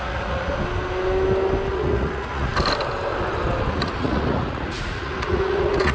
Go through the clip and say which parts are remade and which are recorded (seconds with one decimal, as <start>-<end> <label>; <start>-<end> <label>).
0.0-0.5 remade; 0.5-1.7 recorded; 1.7-2.5 remade; 2.5-3.7 recorded; 3.7-5.9 remade